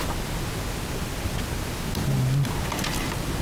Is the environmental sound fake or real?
real